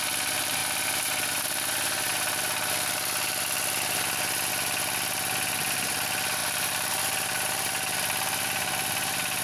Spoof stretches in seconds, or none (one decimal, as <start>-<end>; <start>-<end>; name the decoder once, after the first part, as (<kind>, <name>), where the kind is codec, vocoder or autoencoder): none